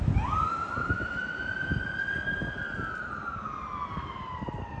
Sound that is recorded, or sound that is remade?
recorded